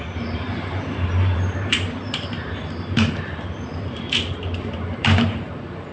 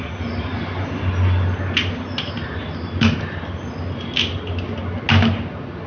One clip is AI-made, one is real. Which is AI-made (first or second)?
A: first